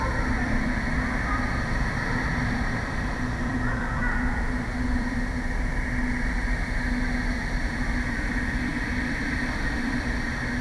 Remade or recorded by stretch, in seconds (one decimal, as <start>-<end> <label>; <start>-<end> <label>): 0.0-10.6 remade